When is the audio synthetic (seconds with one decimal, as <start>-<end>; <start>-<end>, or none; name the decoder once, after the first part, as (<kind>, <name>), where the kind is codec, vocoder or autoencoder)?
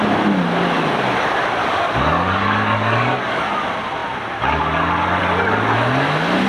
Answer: 1.6-3.4 (codec, DAC)